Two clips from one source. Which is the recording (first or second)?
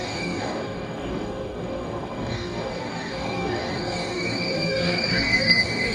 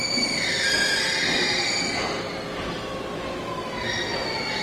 second